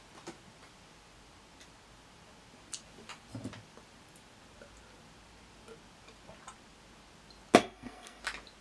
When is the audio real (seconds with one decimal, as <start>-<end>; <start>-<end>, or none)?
0.0-7.6; 8.2-8.6